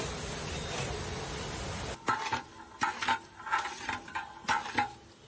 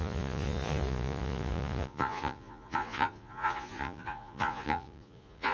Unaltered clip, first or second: first